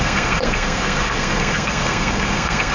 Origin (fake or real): fake